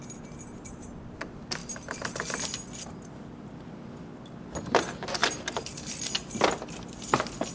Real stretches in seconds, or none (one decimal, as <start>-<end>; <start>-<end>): 0.0-7.5